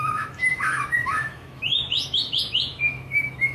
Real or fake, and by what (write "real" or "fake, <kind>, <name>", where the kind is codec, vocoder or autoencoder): fake, autoencoder, DAC-VAE